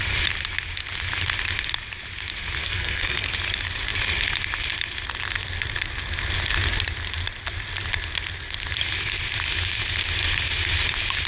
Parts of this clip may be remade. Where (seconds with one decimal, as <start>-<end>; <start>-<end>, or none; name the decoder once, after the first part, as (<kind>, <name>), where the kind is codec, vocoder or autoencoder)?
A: 2.6-3.3 (codec, SNAC)